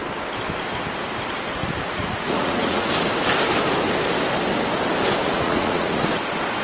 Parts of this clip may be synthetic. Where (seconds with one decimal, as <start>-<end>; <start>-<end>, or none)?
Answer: 1.6-2.9; 5.2-6.1